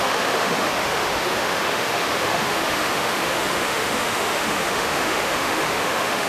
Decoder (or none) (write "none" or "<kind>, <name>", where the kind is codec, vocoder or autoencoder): autoencoder, DAC-VAE